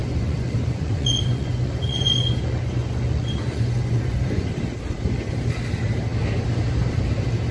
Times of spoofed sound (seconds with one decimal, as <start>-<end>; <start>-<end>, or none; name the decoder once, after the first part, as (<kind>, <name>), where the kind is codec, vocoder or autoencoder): 0.0-4.5 (vocoder, Vocos)